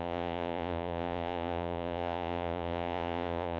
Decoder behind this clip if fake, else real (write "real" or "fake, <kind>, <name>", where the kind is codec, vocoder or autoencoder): fake, vocoder, Vocos